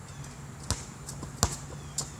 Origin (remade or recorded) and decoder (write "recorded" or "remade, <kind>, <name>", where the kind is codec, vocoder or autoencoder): recorded